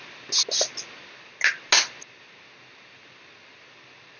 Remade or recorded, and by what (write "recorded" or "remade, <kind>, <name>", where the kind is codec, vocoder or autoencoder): recorded